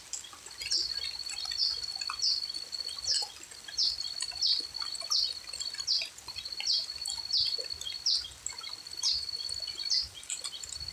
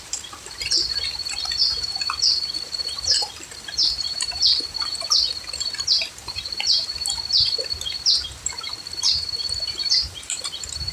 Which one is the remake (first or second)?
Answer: second